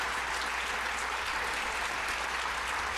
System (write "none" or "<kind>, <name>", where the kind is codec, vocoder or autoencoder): none